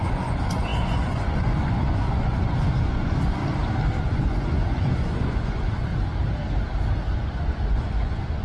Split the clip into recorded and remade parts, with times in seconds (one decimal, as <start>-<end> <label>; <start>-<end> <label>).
0.0-3.4 remade; 3.4-4.0 recorded; 4.0-5.9 remade; 5.9-7.1 recorded; 7.1-8.4 remade